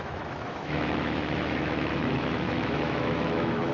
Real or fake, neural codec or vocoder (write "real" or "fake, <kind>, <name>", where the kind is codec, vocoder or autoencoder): fake, autoencoder, DAC-VAE